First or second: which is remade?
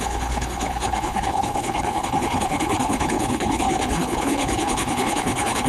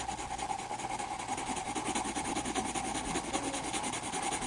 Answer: first